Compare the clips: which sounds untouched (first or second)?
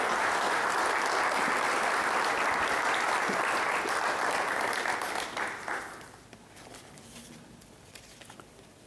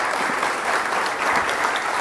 first